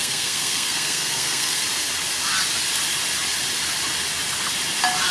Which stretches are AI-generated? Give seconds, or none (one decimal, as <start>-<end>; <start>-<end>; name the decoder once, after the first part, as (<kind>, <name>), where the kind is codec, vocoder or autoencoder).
0.0-1.6 (codec, SNAC)